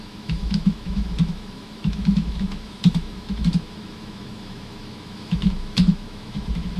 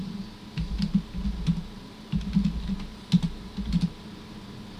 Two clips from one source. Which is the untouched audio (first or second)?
second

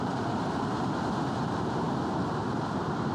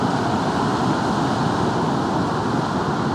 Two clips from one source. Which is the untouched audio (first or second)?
second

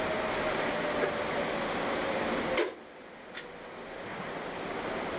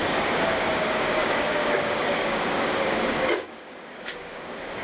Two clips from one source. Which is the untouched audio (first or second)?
first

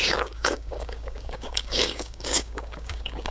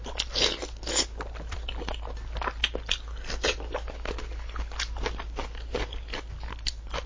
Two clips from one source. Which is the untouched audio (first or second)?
second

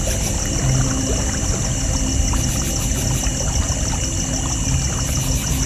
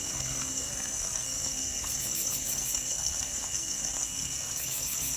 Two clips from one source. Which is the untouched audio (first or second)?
first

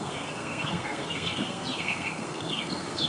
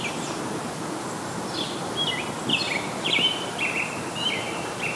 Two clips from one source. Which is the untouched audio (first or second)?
second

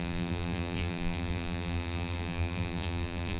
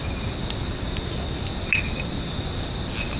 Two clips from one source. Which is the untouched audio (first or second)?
second